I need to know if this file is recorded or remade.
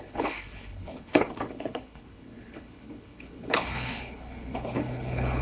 remade